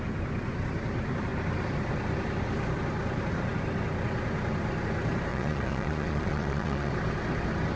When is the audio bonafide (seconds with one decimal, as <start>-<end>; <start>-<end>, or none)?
0.0-5.3; 6.9-7.8